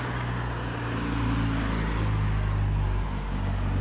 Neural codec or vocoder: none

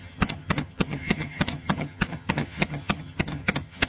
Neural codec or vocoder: vocoder, HiFi-GAN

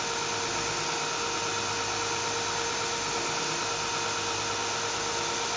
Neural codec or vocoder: none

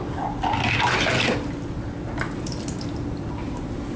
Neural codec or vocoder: none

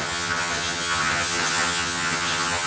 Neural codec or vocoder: vocoder, HiFi-GAN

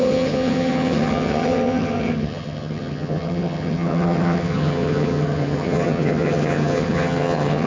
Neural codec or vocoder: vocoder, HiFi-GAN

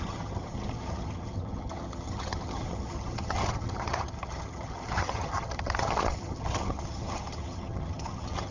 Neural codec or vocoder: vocoder, HiFi-GAN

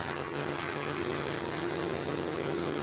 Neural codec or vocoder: vocoder, HiFi-GAN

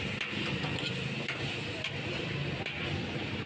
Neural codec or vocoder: none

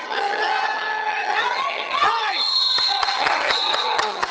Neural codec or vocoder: vocoder, HiFi-GAN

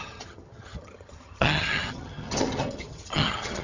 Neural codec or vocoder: vocoder, HiFi-GAN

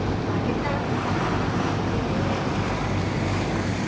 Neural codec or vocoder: none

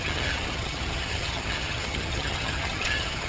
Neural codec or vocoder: vocoder, HiFi-GAN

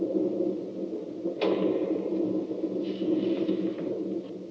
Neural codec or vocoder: none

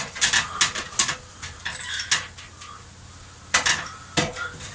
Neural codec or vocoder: none